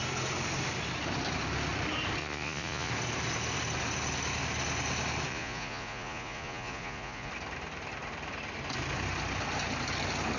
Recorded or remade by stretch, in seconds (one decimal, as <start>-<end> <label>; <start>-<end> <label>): 0.0-2.2 recorded; 2.2-2.9 remade; 2.9-5.3 recorded; 5.3-7.3 remade; 7.3-10.4 recorded